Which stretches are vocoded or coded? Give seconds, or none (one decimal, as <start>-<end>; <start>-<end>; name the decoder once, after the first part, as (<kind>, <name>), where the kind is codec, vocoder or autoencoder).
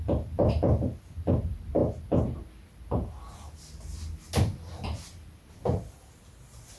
none